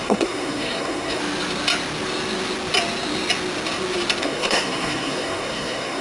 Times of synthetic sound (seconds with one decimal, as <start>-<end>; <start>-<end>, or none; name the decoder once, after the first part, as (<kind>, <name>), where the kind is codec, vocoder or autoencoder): 0.0-1.2 (codec, SNAC); 4.2-6.0